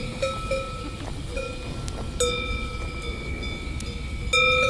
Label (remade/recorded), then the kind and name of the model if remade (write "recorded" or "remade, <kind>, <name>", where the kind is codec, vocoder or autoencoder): recorded